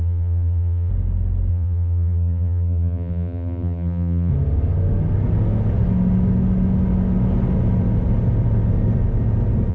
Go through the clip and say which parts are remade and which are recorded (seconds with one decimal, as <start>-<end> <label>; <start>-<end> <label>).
0.0-0.9 remade; 0.9-1.5 recorded; 1.5-4.3 remade; 4.3-9.7 recorded